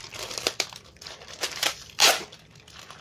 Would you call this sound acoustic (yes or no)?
no